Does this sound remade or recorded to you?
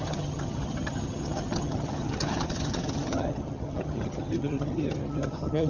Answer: remade